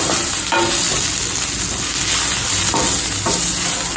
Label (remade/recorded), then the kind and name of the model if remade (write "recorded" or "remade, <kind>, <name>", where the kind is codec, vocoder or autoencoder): recorded